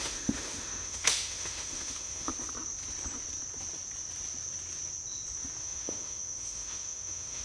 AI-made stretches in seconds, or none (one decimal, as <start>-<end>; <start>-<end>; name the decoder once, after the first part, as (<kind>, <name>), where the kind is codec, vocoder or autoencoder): 0.0-2.3 (autoencoder, DAC-VAE); 5.6-7.4